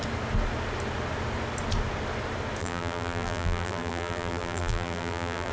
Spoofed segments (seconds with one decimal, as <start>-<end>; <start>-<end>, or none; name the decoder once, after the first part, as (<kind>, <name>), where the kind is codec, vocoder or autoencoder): 2.6-5.5 (vocoder, BigVGAN v2)